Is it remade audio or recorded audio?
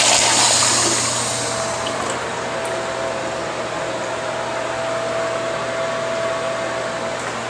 recorded